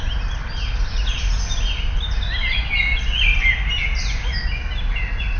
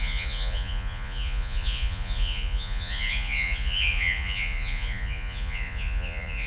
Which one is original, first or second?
first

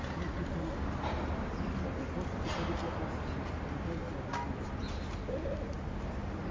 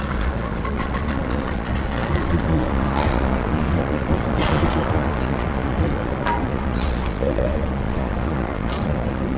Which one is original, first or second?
first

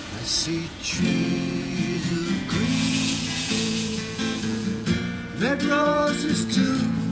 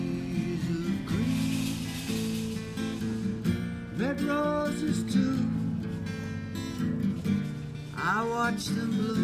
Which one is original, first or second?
second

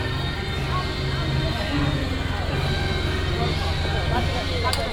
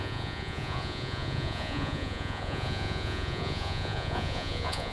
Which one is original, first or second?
first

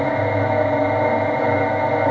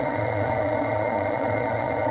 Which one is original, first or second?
first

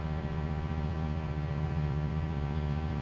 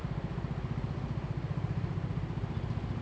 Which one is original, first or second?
second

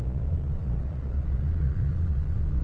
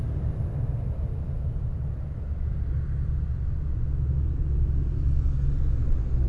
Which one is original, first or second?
second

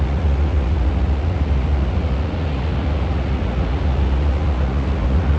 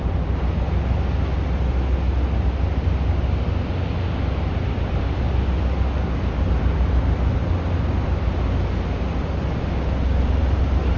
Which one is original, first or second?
second